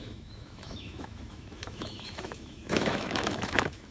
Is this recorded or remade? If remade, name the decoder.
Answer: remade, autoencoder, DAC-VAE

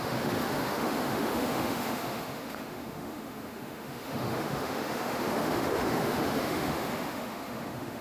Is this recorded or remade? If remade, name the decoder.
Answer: remade, autoencoder, DAC-VAE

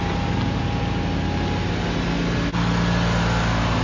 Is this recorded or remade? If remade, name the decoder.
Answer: recorded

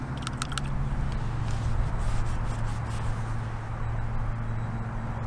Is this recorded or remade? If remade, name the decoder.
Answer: recorded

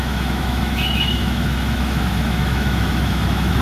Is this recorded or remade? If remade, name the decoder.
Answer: remade, autoencoder, DAC-VAE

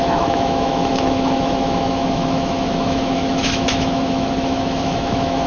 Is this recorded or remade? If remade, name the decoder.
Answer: remade, autoencoder, DAC-VAE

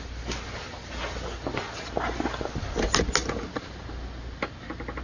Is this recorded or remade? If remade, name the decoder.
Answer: recorded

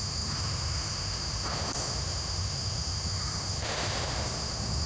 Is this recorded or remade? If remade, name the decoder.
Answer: remade, autoencoder, DAC-VAE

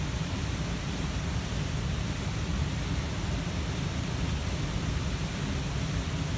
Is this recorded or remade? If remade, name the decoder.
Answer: recorded